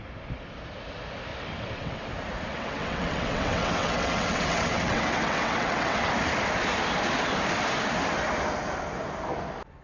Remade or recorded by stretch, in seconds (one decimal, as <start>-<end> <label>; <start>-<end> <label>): 0.0-1.3 recorded; 1.3-2.1 remade; 2.1-2.5 recorded; 2.5-6.1 remade; 6.1-9.8 recorded